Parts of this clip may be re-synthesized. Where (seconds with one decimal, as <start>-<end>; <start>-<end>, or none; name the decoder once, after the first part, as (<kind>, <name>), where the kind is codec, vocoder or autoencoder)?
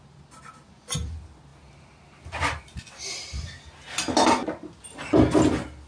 none